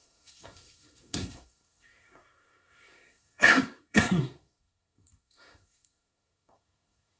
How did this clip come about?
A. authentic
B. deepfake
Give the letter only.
B